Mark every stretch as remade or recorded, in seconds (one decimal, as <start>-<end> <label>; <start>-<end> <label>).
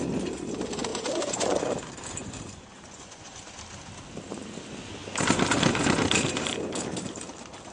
0.0-0.9 recorded; 0.9-1.6 remade; 1.6-2.2 recorded; 2.2-3.4 remade; 3.4-7.7 recorded